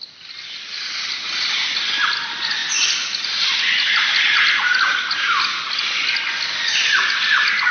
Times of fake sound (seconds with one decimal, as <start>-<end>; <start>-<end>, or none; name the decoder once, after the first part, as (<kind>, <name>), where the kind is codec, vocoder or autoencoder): none